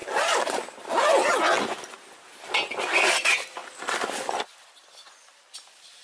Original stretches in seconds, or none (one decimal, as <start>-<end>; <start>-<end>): 0.0-2.8